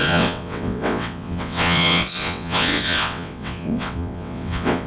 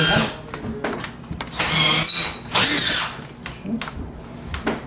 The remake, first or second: first